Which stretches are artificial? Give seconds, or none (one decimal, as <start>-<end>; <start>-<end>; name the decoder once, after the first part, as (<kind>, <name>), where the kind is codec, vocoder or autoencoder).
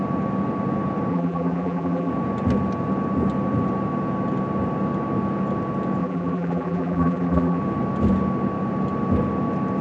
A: 1.1-2.1 (vocoder, BigVGAN v2); 6.0-7.6